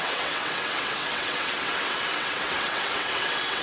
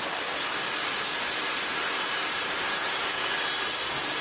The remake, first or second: first